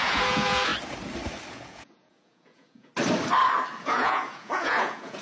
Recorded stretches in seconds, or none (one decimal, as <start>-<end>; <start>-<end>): 0.7-1.5; 2.9-3.8